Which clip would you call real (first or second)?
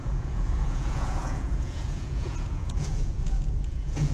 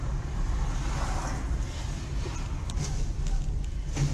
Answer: second